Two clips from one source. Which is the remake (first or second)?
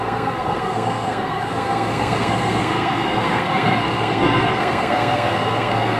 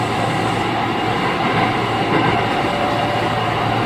first